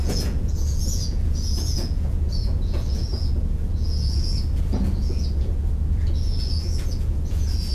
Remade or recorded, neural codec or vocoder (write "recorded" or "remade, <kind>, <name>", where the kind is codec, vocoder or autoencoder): remade, vocoder, Vocos